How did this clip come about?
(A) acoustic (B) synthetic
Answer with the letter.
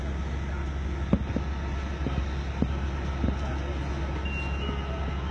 A